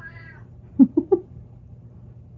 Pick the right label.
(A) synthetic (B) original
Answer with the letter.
B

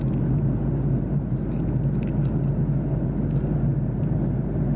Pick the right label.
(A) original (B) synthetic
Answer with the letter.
A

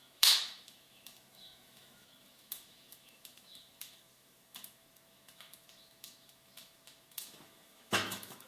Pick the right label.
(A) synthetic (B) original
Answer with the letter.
A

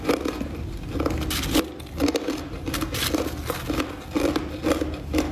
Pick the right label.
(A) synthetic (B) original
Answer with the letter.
B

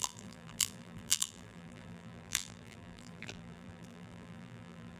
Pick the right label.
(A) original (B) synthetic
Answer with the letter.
B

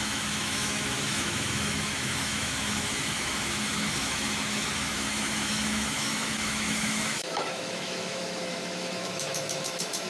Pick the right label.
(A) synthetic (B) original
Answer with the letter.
A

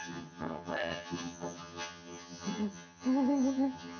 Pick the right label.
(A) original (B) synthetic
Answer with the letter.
B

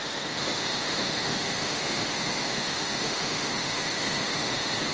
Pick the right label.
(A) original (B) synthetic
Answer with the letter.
B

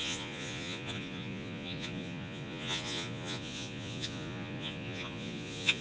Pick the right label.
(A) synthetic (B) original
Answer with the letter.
A